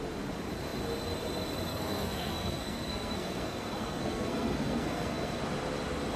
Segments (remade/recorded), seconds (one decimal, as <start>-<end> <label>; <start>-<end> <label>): 0.0-1.7 recorded; 1.7-5.4 remade; 5.4-6.2 recorded